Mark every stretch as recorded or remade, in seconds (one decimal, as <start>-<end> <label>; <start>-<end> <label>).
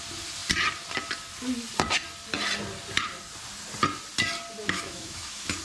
0.0-4.6 recorded; 4.6-5.6 remade